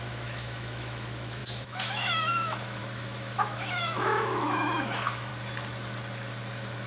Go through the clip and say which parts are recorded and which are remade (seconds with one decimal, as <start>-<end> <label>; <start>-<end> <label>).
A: 0.0-5.3 remade; 5.3-6.9 recorded